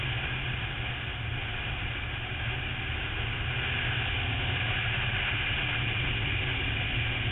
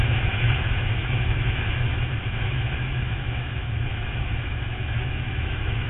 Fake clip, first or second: second